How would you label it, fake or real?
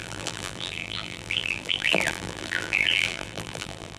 fake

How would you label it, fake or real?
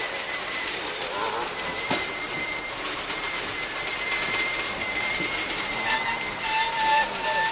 fake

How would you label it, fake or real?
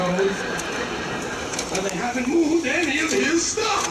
fake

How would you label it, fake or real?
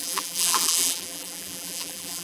fake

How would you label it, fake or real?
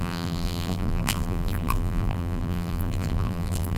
fake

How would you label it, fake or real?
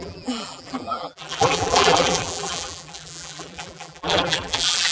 fake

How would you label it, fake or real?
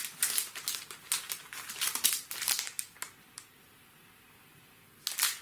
real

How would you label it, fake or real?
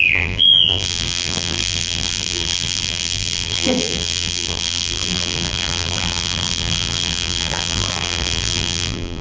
fake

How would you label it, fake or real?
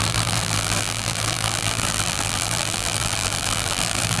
fake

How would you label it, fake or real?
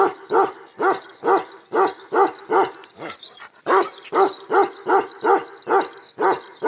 real